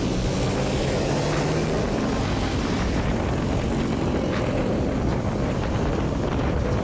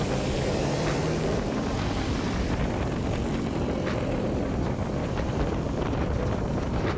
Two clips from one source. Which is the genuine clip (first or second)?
first